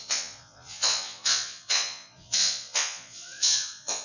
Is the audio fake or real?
fake